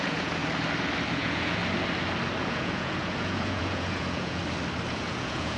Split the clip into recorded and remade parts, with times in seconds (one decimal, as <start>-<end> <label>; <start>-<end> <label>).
0.0-0.4 remade; 0.4-1.1 recorded; 1.1-1.6 remade; 1.6-2.4 recorded; 2.4-4.4 remade; 4.4-4.9 recorded; 4.9-5.6 remade